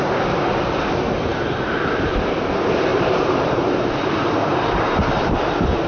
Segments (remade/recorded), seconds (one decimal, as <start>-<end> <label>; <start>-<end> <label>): 0.0-2.9 recorded; 2.9-4.1 remade; 4.1-4.5 recorded; 4.5-5.4 remade; 5.4-5.9 recorded